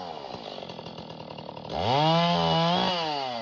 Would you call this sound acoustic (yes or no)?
yes